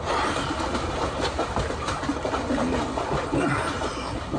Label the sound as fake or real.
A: real